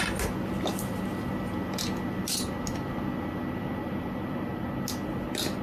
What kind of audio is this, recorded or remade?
recorded